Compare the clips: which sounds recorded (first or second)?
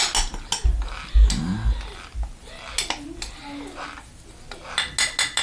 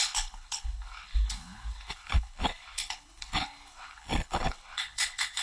first